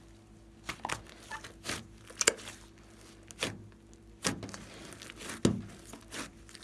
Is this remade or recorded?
recorded